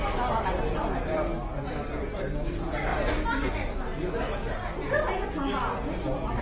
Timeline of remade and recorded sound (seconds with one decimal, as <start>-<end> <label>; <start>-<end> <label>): 0.0-1.3 remade; 1.3-2.0 recorded; 2.0-3.9 remade; 3.9-6.4 recorded